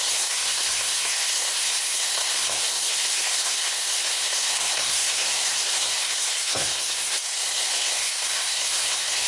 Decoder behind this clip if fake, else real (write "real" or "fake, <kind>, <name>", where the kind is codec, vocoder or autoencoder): fake, codec, SNAC